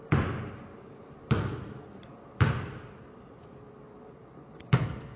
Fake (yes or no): no